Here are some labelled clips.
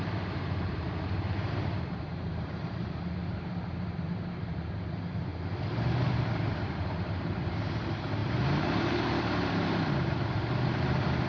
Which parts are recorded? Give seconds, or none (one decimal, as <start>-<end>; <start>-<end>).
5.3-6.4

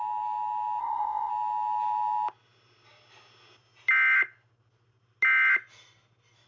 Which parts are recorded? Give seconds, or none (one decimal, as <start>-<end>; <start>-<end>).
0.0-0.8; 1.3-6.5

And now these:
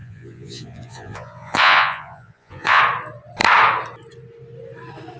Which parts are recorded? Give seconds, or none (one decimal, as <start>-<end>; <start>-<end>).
2.8-5.2

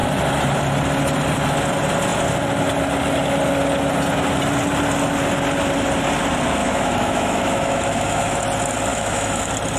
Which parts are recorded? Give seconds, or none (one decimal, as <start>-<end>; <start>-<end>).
0.0-6.6; 8.4-8.9; 9.4-9.8